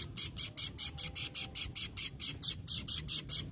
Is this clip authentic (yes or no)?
yes